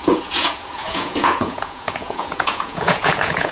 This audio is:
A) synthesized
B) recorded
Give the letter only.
A